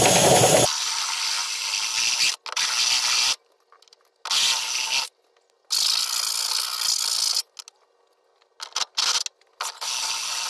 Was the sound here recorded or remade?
recorded